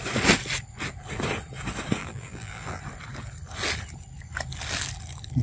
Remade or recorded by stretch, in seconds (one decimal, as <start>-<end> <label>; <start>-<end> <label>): 0.0-2.0 recorded; 2.0-2.8 remade; 2.8-5.4 recorded